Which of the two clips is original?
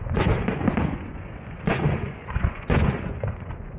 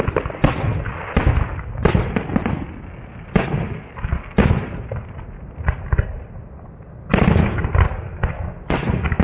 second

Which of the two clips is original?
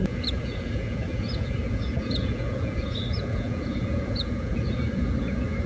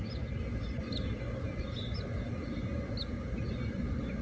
second